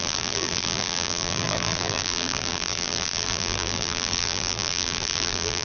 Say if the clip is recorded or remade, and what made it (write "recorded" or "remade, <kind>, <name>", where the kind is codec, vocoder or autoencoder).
remade, vocoder, BigVGAN v2